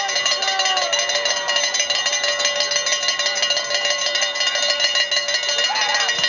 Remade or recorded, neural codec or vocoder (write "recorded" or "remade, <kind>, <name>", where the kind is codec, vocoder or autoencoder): recorded